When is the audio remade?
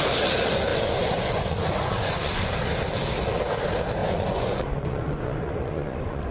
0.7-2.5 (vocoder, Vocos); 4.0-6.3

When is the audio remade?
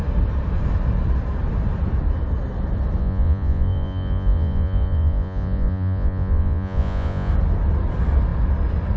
3.0-7.3 (vocoder, Vocos)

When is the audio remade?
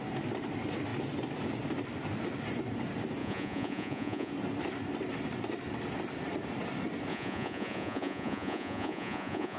3.2-4.3 (vocoder, Vocos); 7.1-9.6